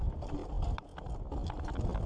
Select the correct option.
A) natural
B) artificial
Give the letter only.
A